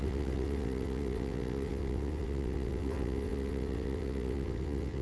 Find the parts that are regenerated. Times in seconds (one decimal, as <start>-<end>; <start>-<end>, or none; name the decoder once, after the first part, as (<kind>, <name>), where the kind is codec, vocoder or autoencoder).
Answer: 0.0-5.0 (vocoder, WaveNeXt)